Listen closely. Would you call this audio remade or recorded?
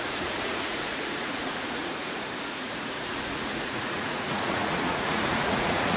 remade